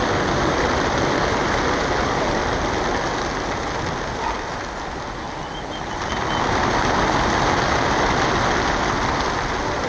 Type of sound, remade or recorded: recorded